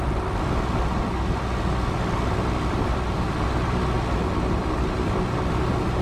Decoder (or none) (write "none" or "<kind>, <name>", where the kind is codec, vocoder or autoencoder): none